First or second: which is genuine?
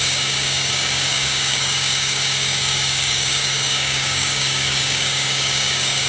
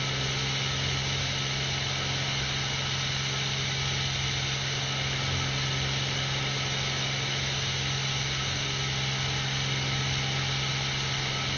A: second